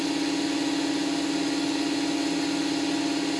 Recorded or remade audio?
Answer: recorded